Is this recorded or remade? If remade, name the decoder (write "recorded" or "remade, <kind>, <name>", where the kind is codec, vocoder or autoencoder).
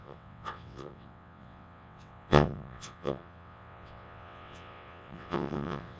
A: remade, vocoder, WaveNeXt